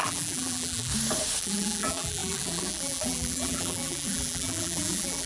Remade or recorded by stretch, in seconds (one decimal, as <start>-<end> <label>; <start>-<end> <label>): 0.0-0.9 remade; 0.9-1.4 recorded; 1.4-5.3 remade